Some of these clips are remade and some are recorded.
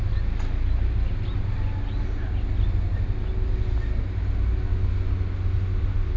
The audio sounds recorded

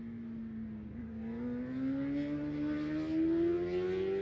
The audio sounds recorded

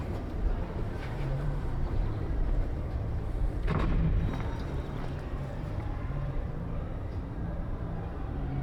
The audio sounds remade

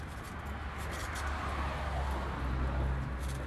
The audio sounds recorded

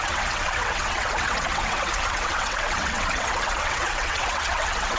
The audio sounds remade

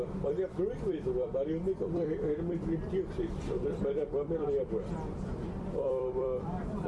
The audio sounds remade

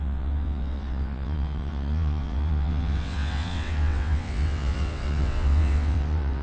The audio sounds remade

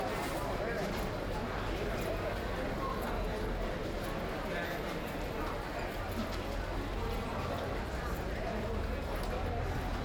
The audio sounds recorded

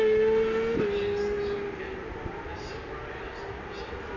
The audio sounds recorded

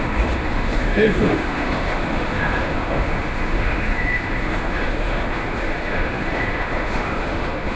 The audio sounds remade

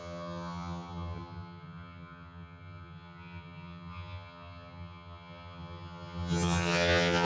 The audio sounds remade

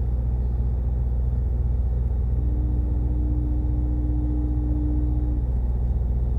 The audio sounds recorded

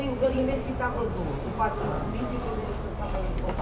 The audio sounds recorded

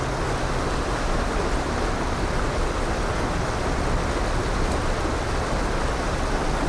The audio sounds recorded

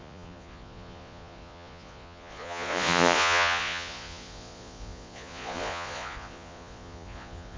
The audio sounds remade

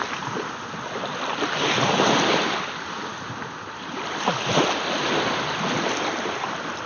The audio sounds recorded